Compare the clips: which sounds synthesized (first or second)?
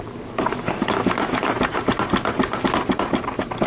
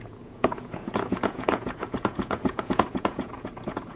second